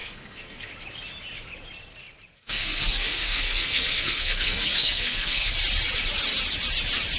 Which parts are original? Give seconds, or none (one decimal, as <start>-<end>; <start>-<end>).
0.7-2.3; 5.5-7.2